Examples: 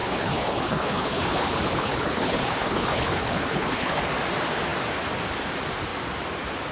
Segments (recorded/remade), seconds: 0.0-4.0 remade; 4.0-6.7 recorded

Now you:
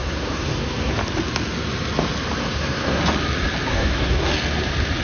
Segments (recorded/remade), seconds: 0.0-0.9 remade; 0.9-2.4 recorded; 2.4-3.0 remade; 3.0-3.7 recorded; 3.7-4.3 remade; 4.3-5.0 recorded

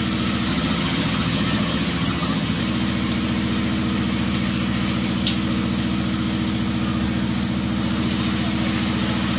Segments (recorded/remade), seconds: 0.0-0.5 recorded; 0.5-2.6 remade; 2.6-9.4 recorded

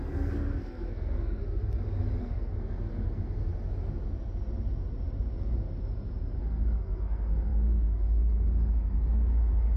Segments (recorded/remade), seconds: 0.0-1.4 remade; 1.4-2.2 recorded; 2.2-3.5 remade; 3.5-6.4 recorded; 6.4-9.8 remade